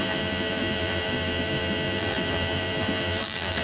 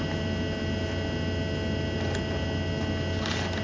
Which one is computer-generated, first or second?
first